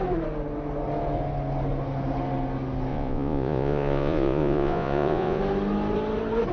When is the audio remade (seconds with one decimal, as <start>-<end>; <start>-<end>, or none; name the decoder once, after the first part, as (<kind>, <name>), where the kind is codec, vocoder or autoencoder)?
2.9-5.4 (vocoder, Vocos)